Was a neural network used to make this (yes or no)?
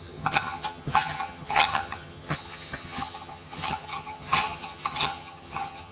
yes